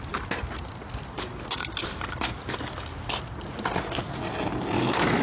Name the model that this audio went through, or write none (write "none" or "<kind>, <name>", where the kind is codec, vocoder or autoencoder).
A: none